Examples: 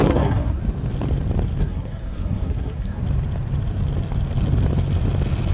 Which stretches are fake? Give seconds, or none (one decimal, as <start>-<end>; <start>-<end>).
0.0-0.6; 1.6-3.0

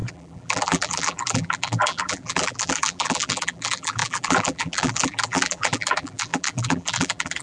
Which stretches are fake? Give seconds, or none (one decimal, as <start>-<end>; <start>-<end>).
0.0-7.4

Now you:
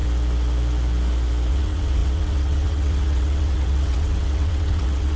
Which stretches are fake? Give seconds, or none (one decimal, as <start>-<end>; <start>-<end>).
1.5-5.2

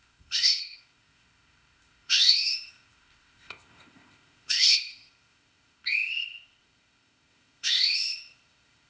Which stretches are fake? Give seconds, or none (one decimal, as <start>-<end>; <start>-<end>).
0.0-8.9

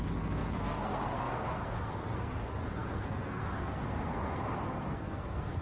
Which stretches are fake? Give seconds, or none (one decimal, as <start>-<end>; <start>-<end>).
0.0-5.6